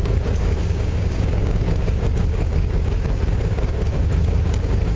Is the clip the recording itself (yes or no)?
no